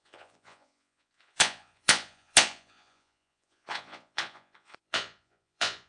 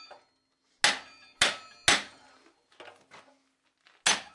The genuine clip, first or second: second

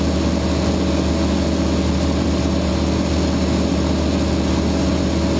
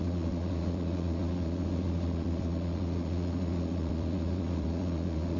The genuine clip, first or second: first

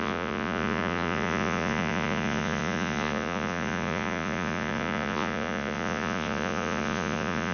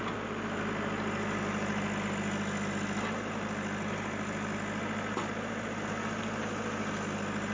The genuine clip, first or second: second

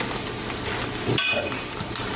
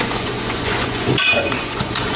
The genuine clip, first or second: first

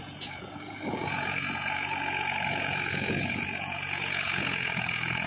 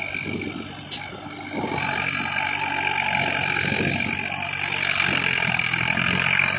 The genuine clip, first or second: second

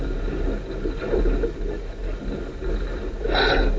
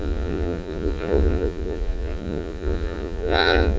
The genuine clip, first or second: first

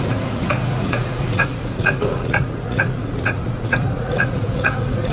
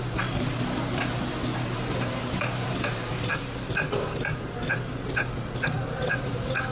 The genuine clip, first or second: second